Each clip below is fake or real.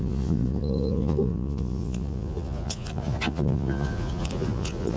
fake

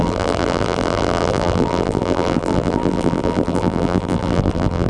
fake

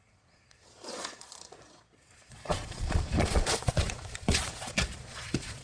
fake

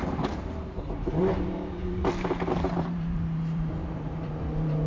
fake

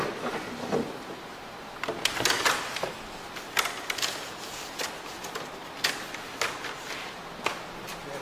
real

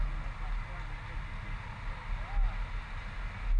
real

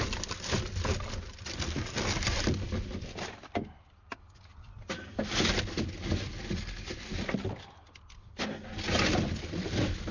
real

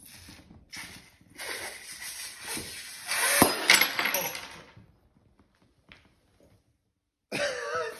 real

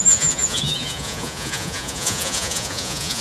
fake